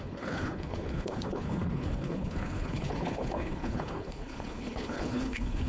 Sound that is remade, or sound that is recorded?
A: remade